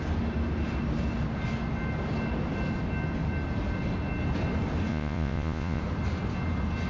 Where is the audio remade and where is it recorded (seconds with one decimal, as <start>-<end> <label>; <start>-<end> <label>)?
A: 0.0-4.9 recorded; 4.9-5.8 remade; 5.8-6.9 recorded